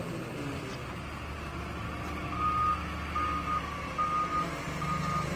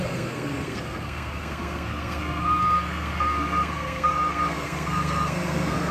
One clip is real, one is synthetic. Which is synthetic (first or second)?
second